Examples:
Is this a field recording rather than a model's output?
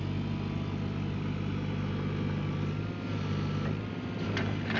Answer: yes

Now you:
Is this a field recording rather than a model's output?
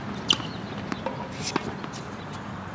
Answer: yes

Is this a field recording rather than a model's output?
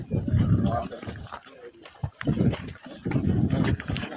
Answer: no